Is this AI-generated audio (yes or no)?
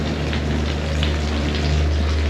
no